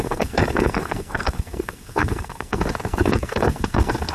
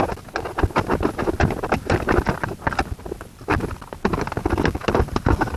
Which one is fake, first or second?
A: first